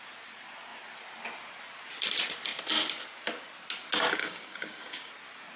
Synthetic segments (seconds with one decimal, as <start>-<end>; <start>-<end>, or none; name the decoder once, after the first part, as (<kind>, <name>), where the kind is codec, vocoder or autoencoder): 4.2-5.1 (codec, DAC)